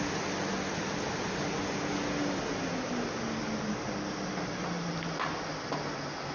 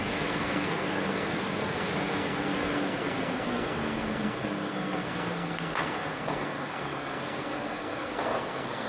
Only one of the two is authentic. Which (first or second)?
first